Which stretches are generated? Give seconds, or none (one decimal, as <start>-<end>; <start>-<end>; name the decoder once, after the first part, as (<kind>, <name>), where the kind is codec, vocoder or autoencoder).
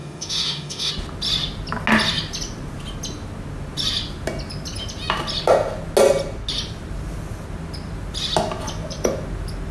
0.0-0.9 (autoencoder, DAC-VAE)